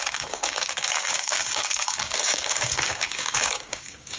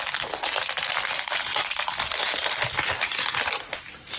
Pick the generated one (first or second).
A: first